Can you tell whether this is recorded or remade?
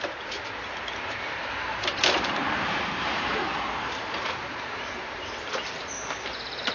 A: remade